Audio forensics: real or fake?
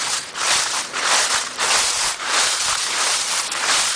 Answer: fake